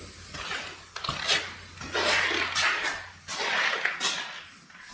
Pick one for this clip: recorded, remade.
recorded